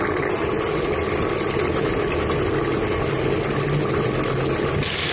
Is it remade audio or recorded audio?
recorded